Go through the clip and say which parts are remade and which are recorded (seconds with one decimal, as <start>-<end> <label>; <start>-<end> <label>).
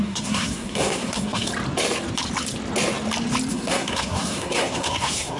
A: 0.0-1.5 remade; 1.5-3.5 recorded; 3.5-5.4 remade